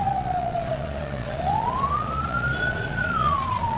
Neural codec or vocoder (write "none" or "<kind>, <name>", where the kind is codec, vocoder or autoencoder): vocoder, Vocos